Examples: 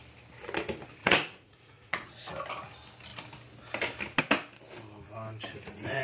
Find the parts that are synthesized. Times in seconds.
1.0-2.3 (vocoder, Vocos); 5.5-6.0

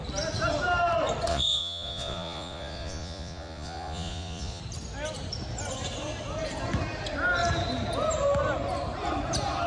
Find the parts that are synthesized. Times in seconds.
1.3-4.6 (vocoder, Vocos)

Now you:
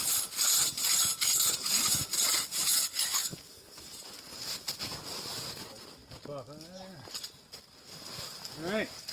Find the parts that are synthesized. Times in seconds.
none

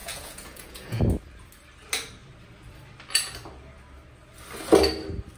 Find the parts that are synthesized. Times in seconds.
0.0-1.0 (vocoder, Vocos)

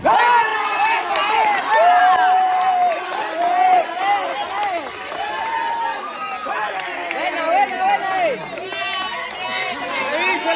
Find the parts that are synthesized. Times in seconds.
none

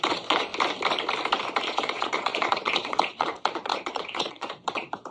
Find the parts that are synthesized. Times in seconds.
0.0-0.5 (vocoder, Vocos); 1.6-5.1

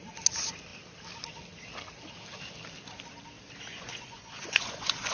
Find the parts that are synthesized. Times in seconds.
3.7-5.1 (vocoder, Vocos)

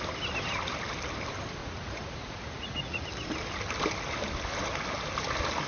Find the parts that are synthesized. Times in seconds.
1.6-3.0 (vocoder, Vocos)